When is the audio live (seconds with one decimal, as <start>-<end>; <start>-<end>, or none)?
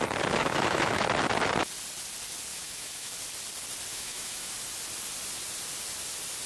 0.0-0.4; 1.0-2.5; 3.1-3.9; 4.5-6.5